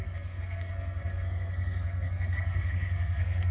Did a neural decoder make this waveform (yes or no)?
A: yes